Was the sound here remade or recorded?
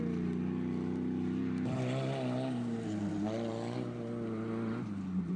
recorded